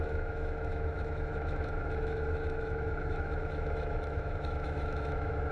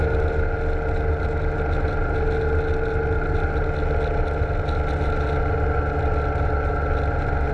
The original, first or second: second